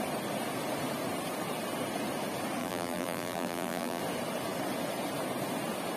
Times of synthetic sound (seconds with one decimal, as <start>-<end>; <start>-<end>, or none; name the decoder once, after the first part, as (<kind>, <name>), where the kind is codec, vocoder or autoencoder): 2.6-4.0 (vocoder, BigVGAN v2)